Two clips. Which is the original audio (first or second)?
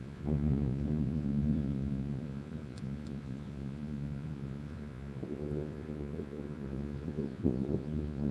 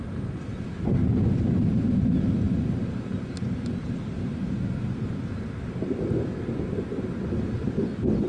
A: second